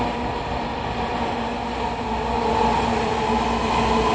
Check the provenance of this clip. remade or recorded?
recorded